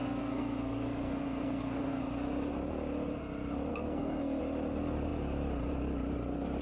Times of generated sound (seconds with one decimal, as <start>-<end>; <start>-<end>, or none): 0.0-2.0; 3.7-4.4